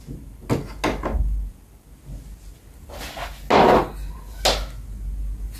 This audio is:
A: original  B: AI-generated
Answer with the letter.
A